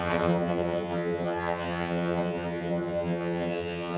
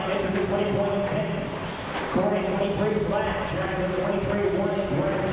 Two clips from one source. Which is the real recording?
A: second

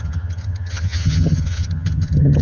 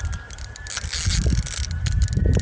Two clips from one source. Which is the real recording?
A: second